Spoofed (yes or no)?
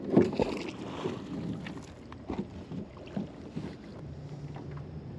no